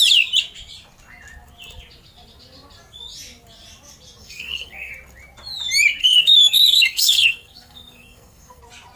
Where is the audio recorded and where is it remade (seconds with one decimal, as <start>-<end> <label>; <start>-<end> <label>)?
0.0-4.2 recorded; 4.2-4.9 remade; 4.9-6.0 recorded; 6.0-8.6 remade; 8.6-9.0 recorded